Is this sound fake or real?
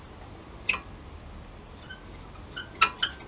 real